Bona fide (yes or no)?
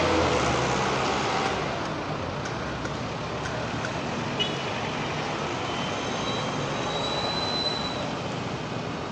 yes